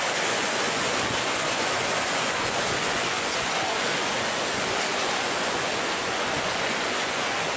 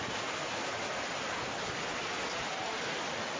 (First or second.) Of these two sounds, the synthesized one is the first